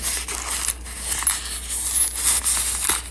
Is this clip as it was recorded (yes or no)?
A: yes